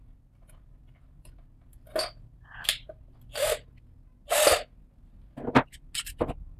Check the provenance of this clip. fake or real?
real